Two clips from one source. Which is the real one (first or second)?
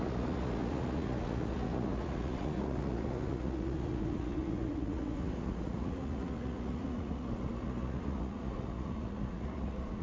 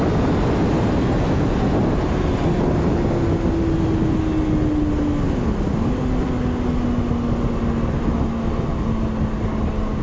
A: second